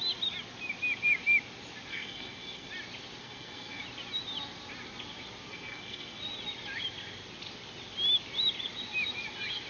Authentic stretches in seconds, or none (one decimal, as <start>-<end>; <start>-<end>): 0.0-1.9; 2.7-3.2; 3.8-5.5; 6.2-9.7